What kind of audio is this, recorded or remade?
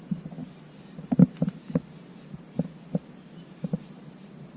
recorded